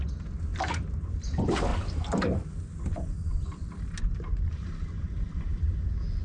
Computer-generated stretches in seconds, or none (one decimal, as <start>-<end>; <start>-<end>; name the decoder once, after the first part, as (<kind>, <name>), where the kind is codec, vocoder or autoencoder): none